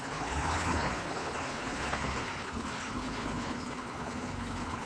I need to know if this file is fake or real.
fake